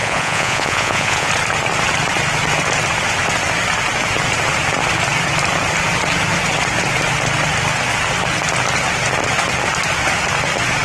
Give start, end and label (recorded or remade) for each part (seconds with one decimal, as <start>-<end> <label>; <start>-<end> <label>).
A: 0.0-1.3 remade; 1.3-10.8 recorded